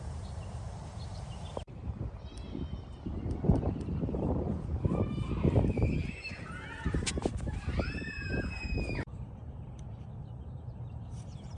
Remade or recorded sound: remade